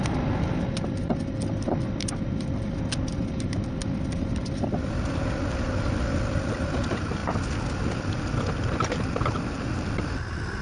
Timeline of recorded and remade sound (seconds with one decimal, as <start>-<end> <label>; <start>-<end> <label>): 0.0-10.6 recorded